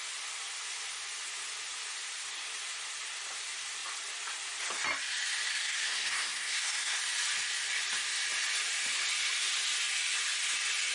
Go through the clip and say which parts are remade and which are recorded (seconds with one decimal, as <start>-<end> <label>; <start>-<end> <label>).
0.0-5.5 recorded; 5.5-7.0 remade; 7.0-10.9 recorded